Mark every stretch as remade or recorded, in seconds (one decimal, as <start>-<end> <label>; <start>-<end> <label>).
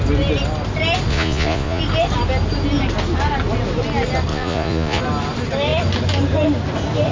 0.0-1.1 recorded; 1.1-1.8 remade; 1.8-4.3 recorded; 4.3-5.0 remade; 5.0-7.1 recorded